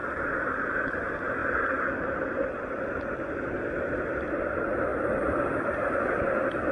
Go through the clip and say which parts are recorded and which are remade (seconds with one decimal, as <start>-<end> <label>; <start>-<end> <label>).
0.0-0.8 remade; 0.8-1.4 recorded; 1.4-3.5 remade; 3.5-6.7 recorded